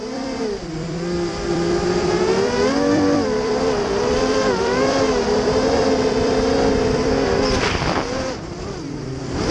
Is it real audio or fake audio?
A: fake